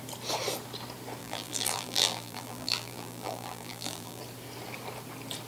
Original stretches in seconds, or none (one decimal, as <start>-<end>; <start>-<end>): 0.0-1.2; 4.2-5.5